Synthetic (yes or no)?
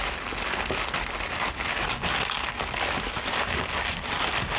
no